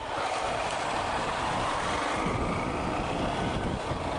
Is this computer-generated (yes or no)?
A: no